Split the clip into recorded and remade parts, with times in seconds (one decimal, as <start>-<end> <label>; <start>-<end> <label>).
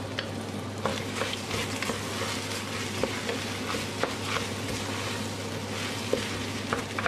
0.0-0.9 recorded; 0.9-1.5 remade; 1.5-7.1 recorded